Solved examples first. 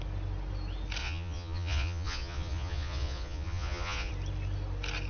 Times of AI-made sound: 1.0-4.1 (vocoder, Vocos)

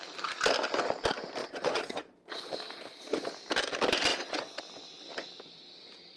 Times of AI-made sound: 1.4-3.3 (vocoder, Vocos); 4.1-4.6

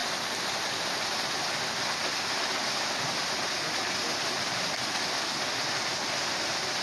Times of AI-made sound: none